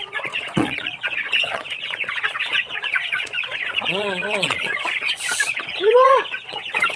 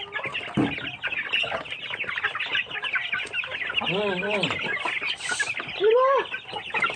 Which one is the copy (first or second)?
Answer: first